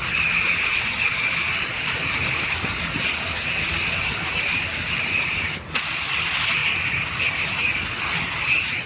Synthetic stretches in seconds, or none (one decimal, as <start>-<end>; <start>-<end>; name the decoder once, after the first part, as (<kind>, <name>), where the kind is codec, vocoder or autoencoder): none